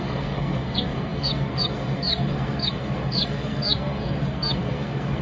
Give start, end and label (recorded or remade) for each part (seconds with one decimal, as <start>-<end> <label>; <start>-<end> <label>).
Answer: 0.0-5.2 remade